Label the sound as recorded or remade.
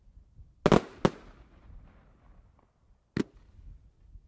recorded